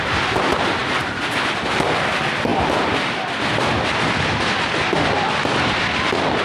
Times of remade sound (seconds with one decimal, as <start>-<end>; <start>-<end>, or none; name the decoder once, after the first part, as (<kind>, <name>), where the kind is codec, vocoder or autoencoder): 2.5-5.9 (vocoder, BigVGAN v2)